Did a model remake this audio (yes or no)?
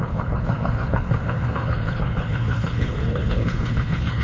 yes